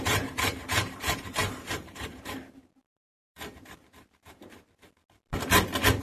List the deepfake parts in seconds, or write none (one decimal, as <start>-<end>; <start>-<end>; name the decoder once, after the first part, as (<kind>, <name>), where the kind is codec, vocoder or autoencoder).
0.0-5.0 (vocoder, BigVGAN v2)